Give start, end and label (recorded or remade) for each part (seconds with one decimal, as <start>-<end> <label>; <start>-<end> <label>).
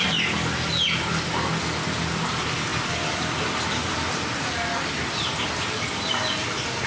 0.0-6.9 remade